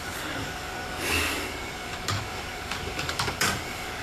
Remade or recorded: remade